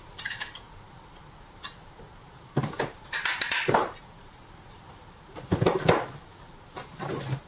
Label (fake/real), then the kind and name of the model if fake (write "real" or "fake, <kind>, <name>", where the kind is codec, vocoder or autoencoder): fake, vocoder, BigVGAN v2